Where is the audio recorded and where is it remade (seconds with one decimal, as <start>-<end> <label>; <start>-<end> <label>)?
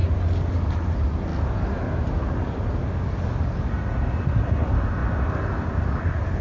0.0-6.4 recorded